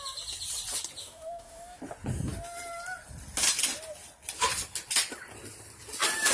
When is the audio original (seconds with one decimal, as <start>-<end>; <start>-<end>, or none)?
0.0-1.0; 1.8-6.3